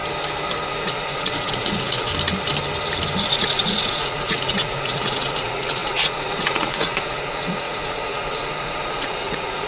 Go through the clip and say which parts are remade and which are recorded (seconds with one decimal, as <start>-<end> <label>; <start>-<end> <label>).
0.0-0.7 recorded; 0.7-2.1 remade; 2.1-3.2 recorded; 3.2-9.7 remade